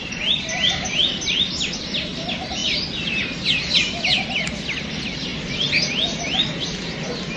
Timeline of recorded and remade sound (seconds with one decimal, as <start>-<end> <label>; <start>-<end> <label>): 0.0-7.4 recorded